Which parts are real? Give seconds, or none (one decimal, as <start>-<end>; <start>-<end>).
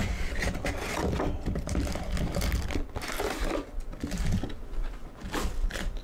0.0-6.0